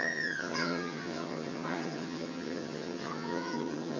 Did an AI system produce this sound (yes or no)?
yes